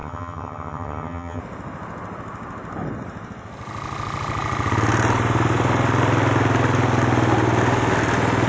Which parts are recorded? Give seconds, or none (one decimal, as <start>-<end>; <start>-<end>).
1.4-8.5